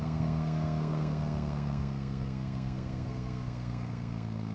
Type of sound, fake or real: fake